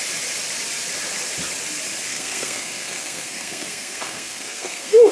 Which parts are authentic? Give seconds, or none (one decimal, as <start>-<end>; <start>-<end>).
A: 0.0-2.1